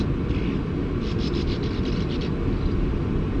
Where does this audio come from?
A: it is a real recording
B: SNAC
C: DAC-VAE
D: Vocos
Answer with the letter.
A